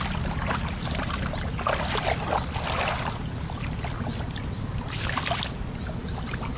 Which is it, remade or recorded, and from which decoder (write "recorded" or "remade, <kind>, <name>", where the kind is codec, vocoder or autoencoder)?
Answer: recorded